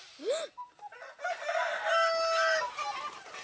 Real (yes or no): yes